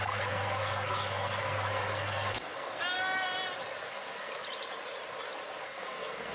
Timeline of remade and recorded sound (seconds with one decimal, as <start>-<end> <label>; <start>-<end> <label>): 0.0-2.8 remade; 2.8-3.8 recorded; 3.8-4.3 remade; 4.3-5.6 recorded; 5.6-6.3 remade